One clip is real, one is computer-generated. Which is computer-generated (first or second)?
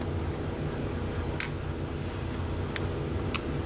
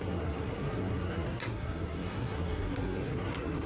second